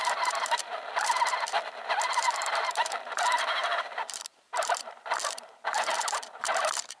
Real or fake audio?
fake